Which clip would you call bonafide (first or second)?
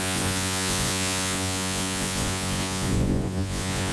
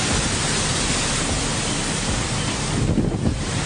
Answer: second